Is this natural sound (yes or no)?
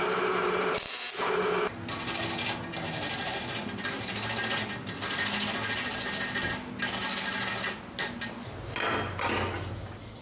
yes